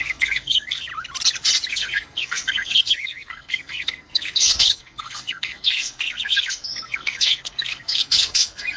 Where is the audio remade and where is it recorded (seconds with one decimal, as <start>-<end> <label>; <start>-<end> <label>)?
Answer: 0.0-0.9 remade; 0.9-1.7 recorded; 1.7-8.8 remade